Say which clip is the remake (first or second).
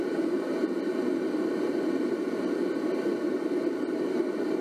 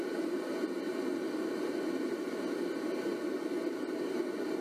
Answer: first